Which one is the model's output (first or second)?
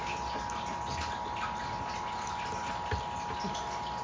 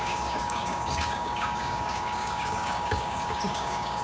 second